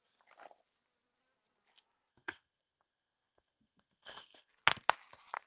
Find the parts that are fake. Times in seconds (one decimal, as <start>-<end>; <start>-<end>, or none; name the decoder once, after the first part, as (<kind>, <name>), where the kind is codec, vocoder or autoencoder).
2.1-4.5 (codec, SNAC)